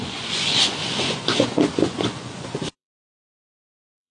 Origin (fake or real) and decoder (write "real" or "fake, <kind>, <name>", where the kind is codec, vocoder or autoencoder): fake, vocoder, Vocos